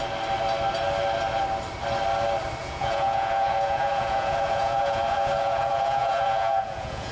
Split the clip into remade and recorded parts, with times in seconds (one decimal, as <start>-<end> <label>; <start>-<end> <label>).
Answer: 0.0-2.6 recorded; 2.6-7.1 remade